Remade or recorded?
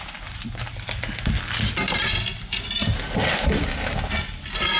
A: recorded